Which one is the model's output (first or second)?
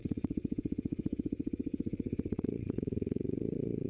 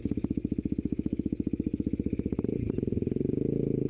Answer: first